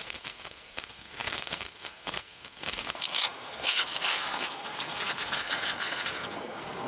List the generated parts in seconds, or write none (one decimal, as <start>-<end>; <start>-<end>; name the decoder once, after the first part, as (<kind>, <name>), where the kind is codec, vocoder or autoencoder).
0.0-6.9 (codec, SNAC)